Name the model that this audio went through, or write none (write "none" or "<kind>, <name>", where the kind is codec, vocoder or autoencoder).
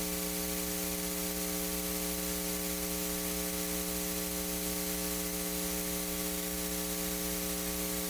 none